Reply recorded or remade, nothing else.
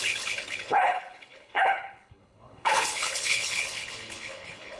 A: remade